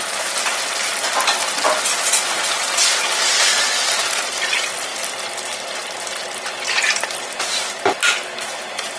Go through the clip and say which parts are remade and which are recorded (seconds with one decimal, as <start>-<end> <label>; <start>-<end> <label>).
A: 0.0-2.6 recorded; 2.6-4.4 remade; 4.4-4.9 recorded; 4.9-5.8 remade; 5.8-9.0 recorded